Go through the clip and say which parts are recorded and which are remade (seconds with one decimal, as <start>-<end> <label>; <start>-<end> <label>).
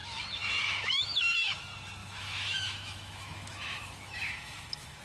0.0-1.6 remade; 1.6-2.0 recorded; 2.0-5.0 remade